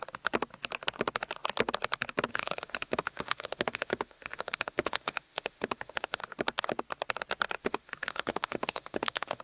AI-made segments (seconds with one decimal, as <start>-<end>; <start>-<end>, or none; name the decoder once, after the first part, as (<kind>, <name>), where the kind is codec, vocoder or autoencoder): 2.3-6.2 (autoencoder, DAC-VAE); 7.6-9.4